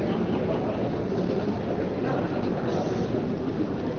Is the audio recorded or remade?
recorded